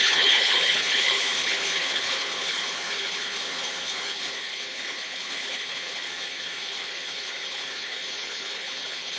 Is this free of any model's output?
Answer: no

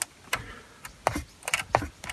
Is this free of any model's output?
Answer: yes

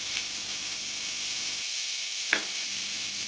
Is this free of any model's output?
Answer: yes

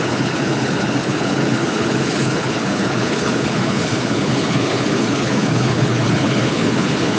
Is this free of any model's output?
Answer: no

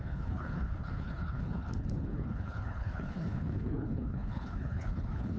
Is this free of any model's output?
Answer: no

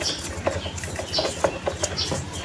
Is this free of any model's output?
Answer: yes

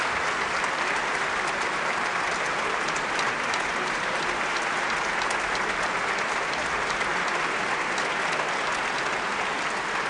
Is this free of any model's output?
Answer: yes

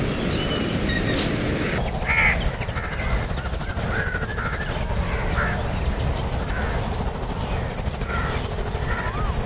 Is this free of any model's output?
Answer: yes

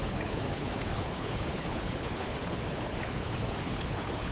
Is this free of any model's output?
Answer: no